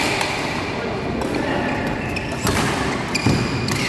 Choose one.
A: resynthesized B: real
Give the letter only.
B